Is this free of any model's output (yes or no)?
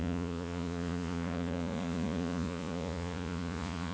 no